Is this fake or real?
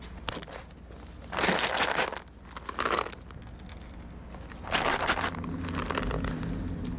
real